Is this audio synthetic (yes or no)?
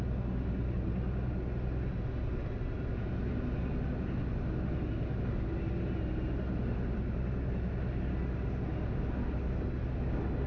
no